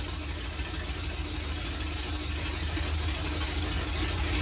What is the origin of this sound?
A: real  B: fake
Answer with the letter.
A